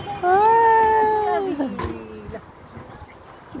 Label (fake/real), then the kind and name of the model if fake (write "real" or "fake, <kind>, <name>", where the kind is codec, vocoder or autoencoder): real